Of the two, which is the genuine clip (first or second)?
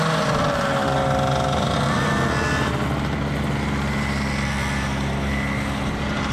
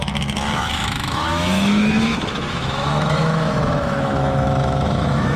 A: first